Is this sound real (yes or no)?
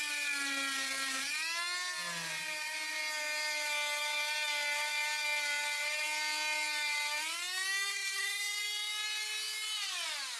yes